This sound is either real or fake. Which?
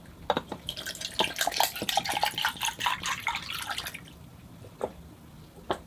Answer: real